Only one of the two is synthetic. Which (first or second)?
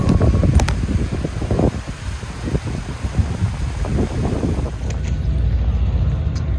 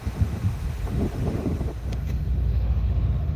second